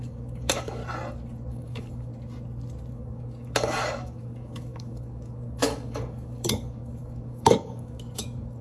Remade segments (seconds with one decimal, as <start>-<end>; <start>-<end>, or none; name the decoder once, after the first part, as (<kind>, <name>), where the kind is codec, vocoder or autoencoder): 0.0-0.8 (codec, DAC); 1.5-2.1; 2.9-8.6